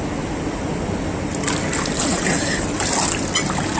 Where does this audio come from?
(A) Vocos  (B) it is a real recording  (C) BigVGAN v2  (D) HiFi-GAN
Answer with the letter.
B